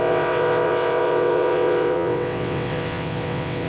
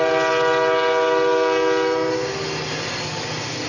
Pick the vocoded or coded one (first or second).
first